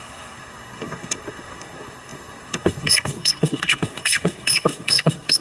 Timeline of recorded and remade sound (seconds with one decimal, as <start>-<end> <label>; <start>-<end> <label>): 0.0-5.4 remade